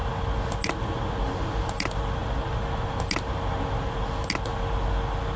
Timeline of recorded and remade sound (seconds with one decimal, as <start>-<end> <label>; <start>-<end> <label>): 0.0-5.4 recorded